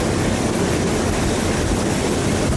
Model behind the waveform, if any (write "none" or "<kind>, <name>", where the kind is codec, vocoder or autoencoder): none